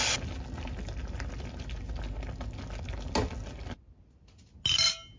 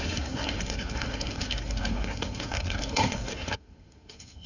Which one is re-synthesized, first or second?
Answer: second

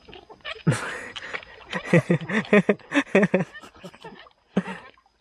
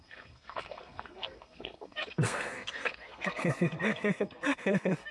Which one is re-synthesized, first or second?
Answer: second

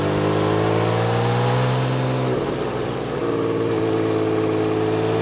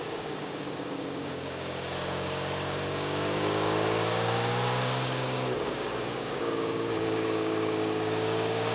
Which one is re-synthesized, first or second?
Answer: second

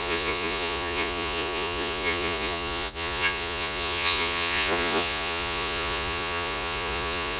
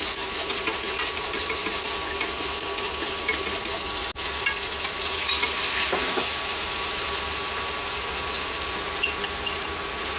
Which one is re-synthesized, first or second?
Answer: first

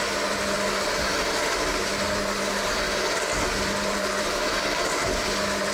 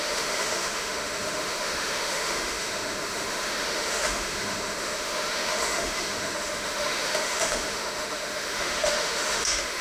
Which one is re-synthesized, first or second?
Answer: second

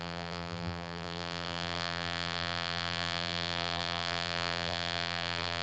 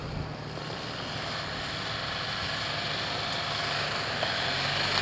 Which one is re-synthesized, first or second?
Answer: first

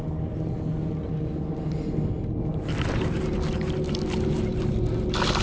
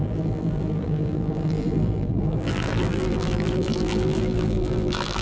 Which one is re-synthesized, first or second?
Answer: second